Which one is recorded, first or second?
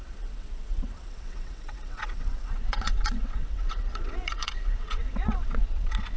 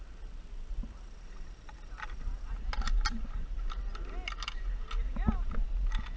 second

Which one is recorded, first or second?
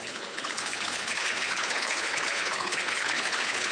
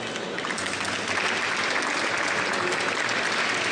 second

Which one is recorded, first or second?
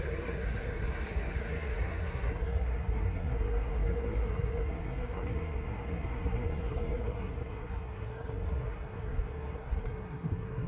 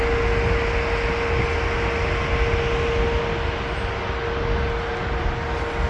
second